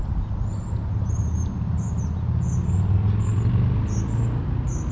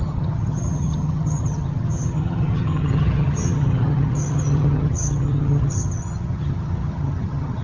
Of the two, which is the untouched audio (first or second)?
first